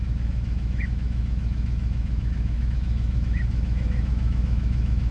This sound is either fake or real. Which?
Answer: fake